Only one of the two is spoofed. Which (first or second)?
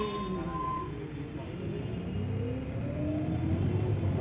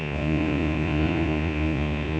second